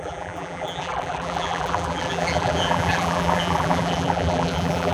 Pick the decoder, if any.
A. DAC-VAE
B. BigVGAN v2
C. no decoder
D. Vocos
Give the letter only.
B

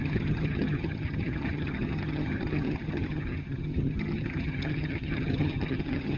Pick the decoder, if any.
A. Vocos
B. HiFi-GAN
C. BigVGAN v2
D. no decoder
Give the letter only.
B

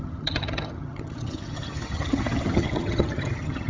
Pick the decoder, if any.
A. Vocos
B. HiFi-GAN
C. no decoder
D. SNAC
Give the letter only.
B